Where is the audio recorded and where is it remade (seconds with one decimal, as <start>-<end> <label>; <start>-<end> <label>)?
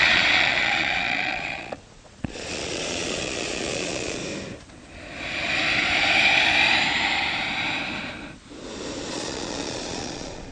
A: 0.0-4.2 remade; 4.2-9.1 recorded; 9.1-10.5 remade